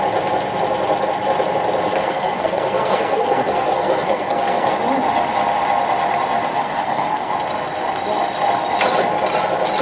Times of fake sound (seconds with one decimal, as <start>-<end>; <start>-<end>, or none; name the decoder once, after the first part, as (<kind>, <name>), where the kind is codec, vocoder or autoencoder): 2.0-4.7 (codec, SNAC); 6.5-7.3